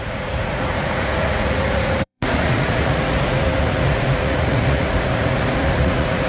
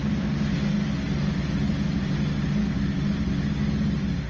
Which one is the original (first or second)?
second